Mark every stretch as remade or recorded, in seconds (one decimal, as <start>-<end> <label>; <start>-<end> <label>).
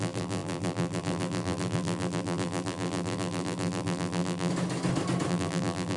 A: 0.0-4.5 remade; 4.5-5.3 recorded; 5.3-6.0 remade